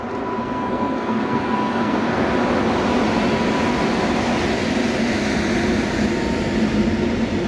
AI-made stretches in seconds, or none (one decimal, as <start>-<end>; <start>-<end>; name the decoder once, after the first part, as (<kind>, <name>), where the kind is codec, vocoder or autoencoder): 0.4-2.3 (codec, SNAC)